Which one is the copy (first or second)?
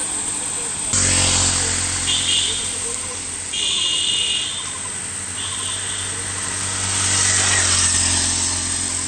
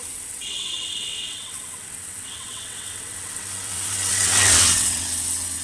second